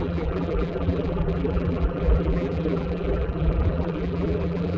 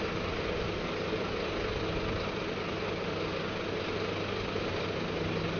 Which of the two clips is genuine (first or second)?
second